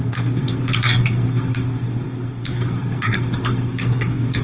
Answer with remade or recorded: remade